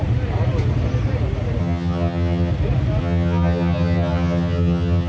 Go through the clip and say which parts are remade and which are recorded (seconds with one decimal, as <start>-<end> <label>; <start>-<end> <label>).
0.0-1.6 recorded; 1.6-2.5 remade; 2.5-3.0 recorded; 3.0-5.1 remade